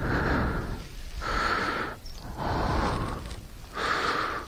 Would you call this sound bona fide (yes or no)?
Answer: yes